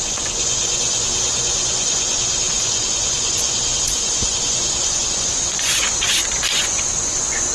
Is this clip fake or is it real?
fake